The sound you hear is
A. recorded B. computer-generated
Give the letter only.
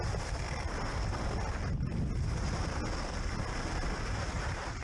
A